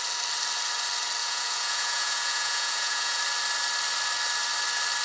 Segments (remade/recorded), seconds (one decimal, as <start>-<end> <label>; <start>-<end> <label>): 0.0-1.2 recorded; 1.2-3.2 remade; 3.2-5.0 recorded